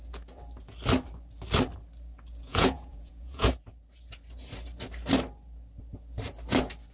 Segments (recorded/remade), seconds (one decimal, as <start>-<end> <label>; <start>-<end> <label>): 0.0-2.5 recorded; 2.5-3.5 remade; 3.5-6.9 recorded

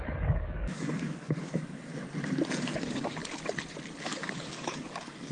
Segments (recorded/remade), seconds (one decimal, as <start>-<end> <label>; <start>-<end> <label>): 0.0-1.9 remade; 1.9-2.5 recorded; 2.5-3.2 remade; 3.2-4.0 recorded; 4.0-5.3 remade

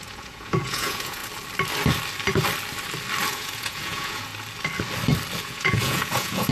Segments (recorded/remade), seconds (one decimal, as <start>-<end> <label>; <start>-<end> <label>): 0.0-1.2 remade; 1.2-3.3 recorded; 3.3-4.3 remade; 4.3-5.4 recorded; 5.4-6.5 remade